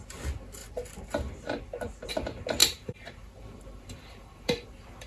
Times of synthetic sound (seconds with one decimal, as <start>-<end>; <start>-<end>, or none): 2.6-5.1